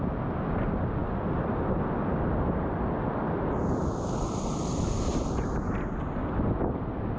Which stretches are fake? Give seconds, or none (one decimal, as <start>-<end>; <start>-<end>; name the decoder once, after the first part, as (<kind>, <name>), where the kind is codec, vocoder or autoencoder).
none